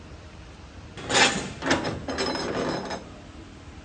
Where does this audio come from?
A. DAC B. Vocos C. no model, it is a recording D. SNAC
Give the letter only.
C